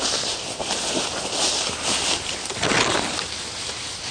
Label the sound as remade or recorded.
recorded